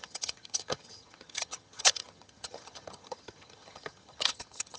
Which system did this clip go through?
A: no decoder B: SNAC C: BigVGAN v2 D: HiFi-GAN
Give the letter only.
D